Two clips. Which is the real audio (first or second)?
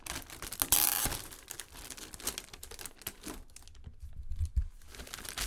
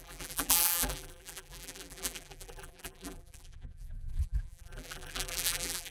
first